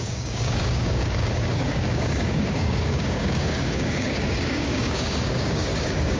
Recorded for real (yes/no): no